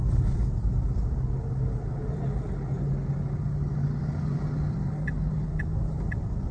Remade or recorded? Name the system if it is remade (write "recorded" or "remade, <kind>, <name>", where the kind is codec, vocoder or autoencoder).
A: recorded